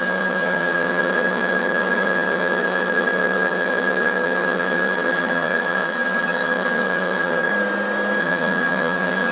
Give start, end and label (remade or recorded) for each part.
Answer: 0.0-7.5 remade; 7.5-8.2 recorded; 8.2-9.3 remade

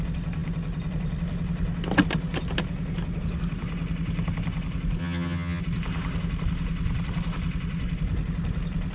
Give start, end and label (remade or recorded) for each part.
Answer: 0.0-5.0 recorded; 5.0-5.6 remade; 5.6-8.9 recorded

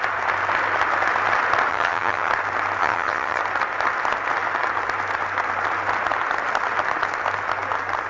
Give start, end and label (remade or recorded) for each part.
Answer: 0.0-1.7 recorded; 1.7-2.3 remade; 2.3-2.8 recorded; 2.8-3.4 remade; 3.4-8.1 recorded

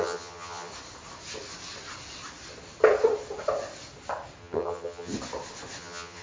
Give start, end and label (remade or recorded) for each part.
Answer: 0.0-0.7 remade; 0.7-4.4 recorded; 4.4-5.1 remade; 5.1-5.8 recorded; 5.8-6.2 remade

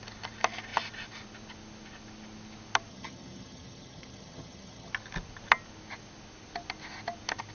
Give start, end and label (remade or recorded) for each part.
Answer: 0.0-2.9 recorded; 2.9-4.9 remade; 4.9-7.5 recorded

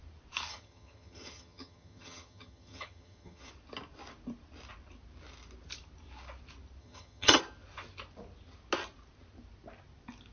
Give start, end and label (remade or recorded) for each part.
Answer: 0.0-0.5 recorded; 0.5-3.5 remade; 3.5-6.8 recorded; 6.8-7.4 remade; 7.4-10.3 recorded

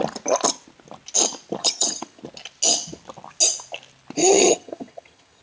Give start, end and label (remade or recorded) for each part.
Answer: 0.0-1.6 recorded; 1.6-2.2 remade; 2.2-4.2 recorded; 4.2-5.4 remade

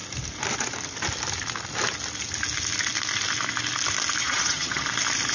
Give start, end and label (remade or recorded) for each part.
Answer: 0.0-4.2 recorded; 4.2-4.8 remade; 4.8-5.3 recorded